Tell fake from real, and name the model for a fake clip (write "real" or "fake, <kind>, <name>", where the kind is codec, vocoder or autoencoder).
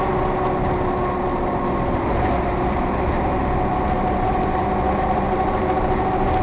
real